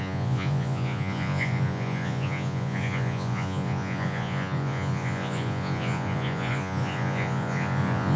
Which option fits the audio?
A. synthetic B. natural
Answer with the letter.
A